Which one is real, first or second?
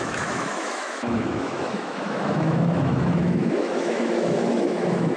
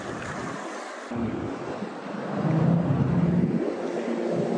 second